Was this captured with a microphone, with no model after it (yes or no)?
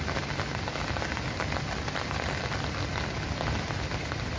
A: yes